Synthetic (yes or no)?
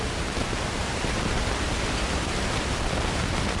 yes